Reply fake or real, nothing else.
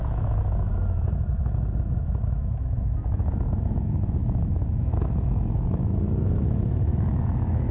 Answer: fake